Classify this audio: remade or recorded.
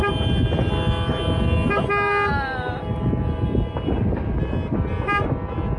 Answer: recorded